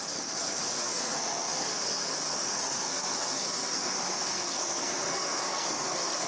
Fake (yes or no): yes